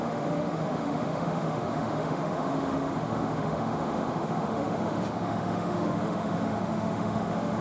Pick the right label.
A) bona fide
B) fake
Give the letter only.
B